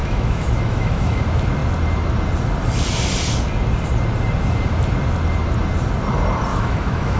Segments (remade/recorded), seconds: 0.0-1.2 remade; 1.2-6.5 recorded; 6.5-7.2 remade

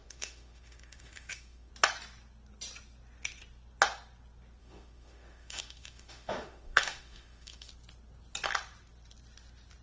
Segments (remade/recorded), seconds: 0.0-1.7 remade; 1.7-4.6 recorded; 4.6-7.7 remade; 7.7-9.8 recorded

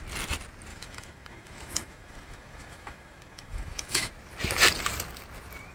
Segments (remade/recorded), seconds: 0.0-0.7 recorded; 0.7-4.1 remade; 4.1-5.7 recorded

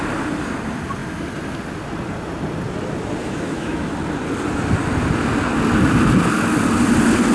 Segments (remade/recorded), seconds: 0.0-3.2 recorded; 3.2-3.9 remade; 3.9-7.3 recorded

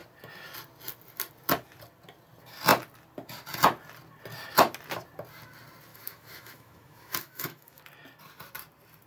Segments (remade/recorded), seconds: 0.0-5.9 recorded; 5.9-7.8 remade; 7.8-9.1 recorded

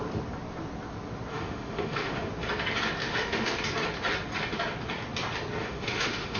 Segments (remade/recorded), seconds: 0.0-1.3 recorded; 1.3-2.3 remade; 2.3-3.0 recorded; 3.0-3.6 remade; 3.6-5.6 recorded; 5.6-6.4 remade

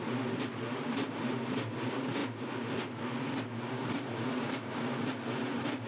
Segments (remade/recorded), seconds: 0.0-5.9 recorded

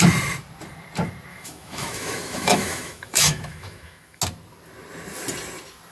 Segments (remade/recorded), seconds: 0.0-1.3 recorded; 1.3-4.2 remade; 4.2-5.9 recorded